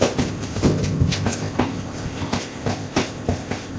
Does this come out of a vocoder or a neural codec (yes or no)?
yes